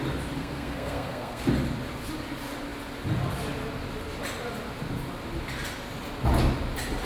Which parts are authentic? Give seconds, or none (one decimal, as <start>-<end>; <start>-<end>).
0.0-0.4; 1.4-7.0